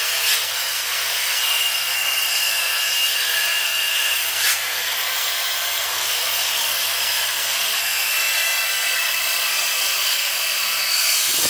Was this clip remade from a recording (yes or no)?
yes